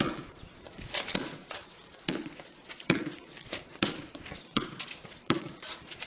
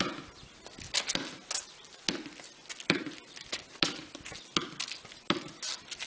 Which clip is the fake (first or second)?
first